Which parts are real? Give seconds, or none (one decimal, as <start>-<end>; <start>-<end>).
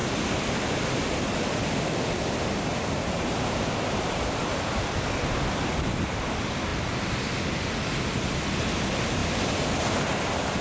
0.0-2.7; 4.4-10.6